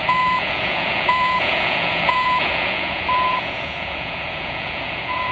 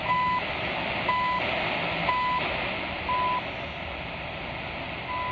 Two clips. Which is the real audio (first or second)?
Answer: second